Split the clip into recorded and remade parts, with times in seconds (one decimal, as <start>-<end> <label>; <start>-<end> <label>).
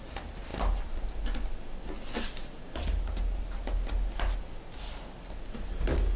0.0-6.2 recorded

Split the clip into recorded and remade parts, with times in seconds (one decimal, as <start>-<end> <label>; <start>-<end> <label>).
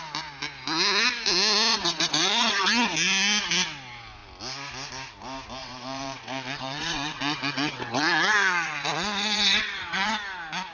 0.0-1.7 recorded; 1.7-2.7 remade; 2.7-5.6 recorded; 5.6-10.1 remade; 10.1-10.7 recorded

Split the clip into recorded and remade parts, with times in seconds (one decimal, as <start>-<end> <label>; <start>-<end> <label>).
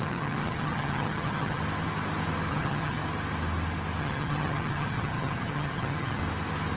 0.0-1.6 remade; 1.6-2.5 recorded; 2.5-3.0 remade; 3.0-4.0 recorded; 4.0-6.2 remade; 6.2-6.8 recorded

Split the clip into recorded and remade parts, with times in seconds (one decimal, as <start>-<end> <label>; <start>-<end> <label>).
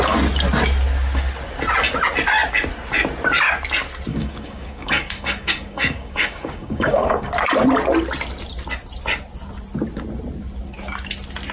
0.0-4.1 recorded; 4.1-7.3 remade; 7.3-11.5 recorded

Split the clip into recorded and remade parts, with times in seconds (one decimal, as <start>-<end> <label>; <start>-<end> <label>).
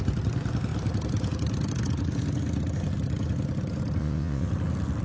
0.0-4.0 recorded; 4.0-4.5 remade; 4.5-5.0 recorded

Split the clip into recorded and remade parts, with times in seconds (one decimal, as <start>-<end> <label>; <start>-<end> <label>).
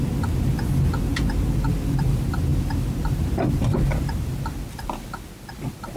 0.0-2.5 recorded; 2.5-3.2 remade; 3.2-6.0 recorded